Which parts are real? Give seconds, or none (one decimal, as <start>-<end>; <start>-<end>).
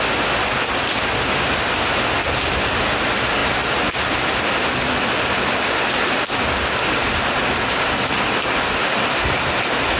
0.0-10.0